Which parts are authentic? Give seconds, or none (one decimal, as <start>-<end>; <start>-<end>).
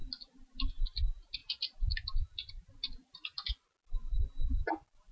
0.0-5.1